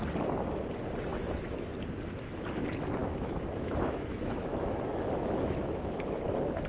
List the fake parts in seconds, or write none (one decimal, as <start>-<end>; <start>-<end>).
1.1-1.7; 3.0-6.2